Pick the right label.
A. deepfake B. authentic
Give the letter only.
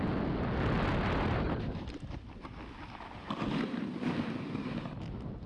B